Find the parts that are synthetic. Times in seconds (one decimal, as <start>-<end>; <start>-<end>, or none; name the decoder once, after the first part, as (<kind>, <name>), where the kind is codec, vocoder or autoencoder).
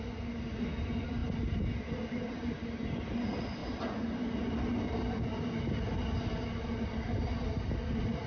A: none